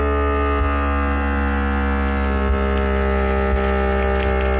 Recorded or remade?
recorded